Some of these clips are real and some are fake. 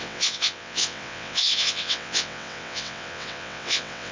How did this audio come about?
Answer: fake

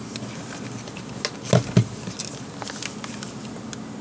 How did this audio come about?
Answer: real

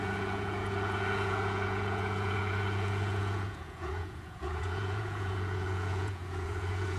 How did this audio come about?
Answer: fake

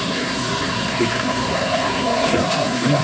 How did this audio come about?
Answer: fake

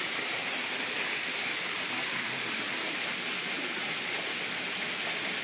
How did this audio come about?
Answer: real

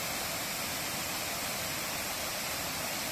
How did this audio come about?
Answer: real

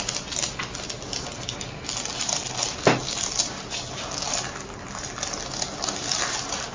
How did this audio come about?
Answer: real